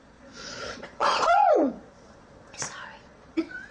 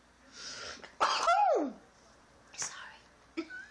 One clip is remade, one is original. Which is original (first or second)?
second